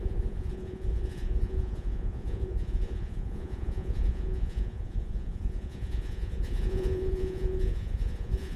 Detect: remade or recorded remade